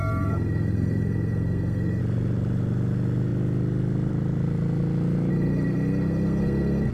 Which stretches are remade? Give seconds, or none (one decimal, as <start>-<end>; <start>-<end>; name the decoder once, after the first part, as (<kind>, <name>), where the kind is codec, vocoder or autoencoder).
0.0-2.0 (codec, SNAC); 5.3-6.9